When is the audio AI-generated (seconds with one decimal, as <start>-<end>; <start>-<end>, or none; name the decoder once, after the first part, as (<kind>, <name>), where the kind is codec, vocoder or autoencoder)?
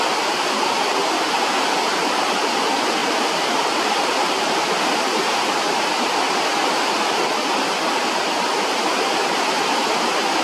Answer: 3.0-4.8 (vocoder, BigVGAN v2)